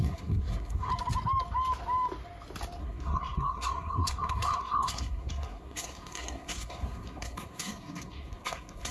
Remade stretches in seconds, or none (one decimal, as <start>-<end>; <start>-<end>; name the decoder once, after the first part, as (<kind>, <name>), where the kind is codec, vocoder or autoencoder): 0.0-0.9 (codec, SNAC); 2.8-8.9